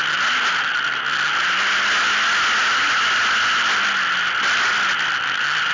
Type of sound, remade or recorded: recorded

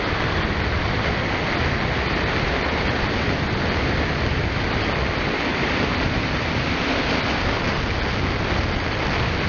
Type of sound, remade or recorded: recorded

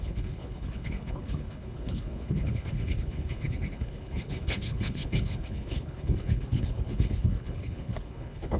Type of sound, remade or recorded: remade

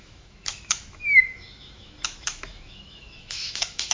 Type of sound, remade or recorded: remade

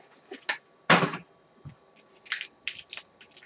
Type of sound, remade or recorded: recorded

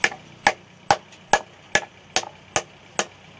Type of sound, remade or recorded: recorded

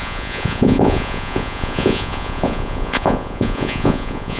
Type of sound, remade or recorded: remade